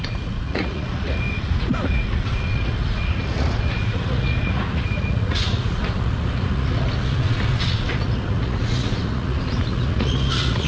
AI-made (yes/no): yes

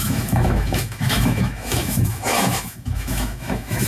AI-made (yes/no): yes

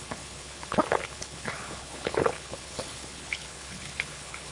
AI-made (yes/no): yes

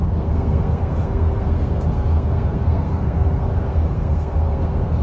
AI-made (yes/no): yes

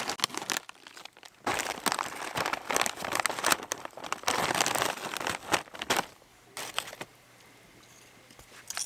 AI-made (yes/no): no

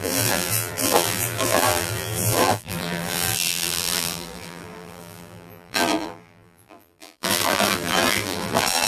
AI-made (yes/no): yes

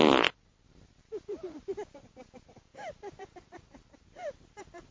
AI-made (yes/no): yes